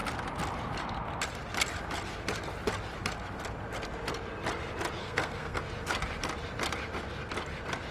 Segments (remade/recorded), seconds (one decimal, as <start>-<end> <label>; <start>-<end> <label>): 0.0-5.0 recorded; 5.0-5.6 remade; 5.6-7.9 recorded